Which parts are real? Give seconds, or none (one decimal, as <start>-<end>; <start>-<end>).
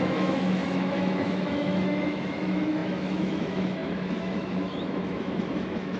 none